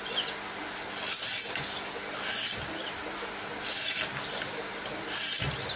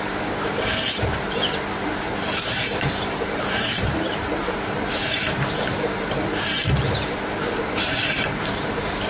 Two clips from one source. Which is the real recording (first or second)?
first